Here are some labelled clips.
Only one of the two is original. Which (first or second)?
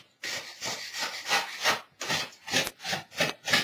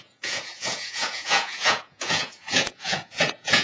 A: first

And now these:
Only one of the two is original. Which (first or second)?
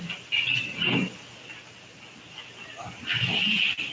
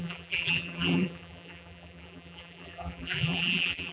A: first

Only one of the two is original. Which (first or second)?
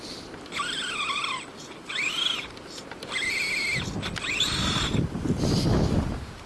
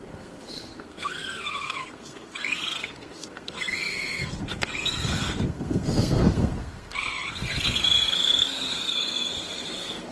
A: first